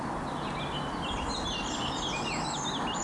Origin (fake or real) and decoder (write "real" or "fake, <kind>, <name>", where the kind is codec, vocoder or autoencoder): real